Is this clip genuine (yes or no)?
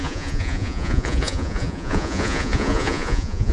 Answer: no